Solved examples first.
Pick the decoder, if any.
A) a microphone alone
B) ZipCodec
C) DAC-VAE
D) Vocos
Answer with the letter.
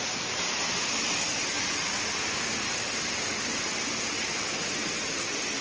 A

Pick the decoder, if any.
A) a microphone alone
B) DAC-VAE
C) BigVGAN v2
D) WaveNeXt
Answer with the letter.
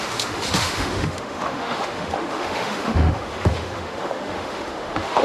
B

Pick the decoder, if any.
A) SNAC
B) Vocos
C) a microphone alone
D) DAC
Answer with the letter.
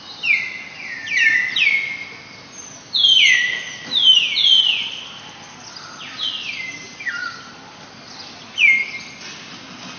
C